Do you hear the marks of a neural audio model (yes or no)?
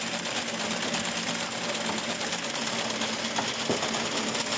no